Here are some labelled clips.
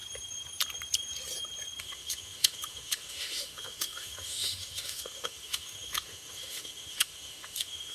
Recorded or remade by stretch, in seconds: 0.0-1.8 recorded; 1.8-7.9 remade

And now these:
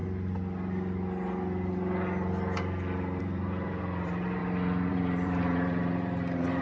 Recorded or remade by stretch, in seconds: 0.0-3.2 recorded; 3.2-4.4 remade; 4.4-4.9 recorded; 4.9-6.6 remade

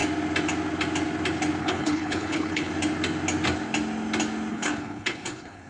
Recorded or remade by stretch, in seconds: 0.0-1.6 recorded; 1.6-2.7 remade; 2.7-4.5 recorded; 4.5-5.7 remade

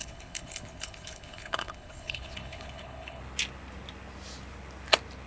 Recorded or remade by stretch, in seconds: 0.0-3.2 remade; 3.2-5.3 recorded

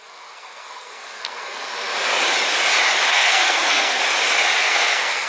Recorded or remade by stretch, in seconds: 0.0-1.7 remade; 1.7-3.1 recorded; 3.1-4.0 remade; 4.0-4.6 recorded; 4.6-5.3 remade

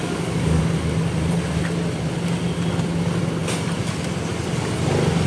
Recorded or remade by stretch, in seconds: 0.0-0.6 remade; 0.6-5.3 recorded

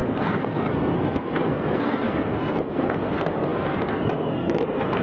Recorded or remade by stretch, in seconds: 0.0-5.0 remade